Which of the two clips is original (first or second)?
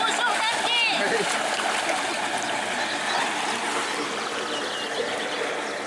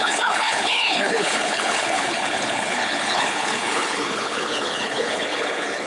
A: first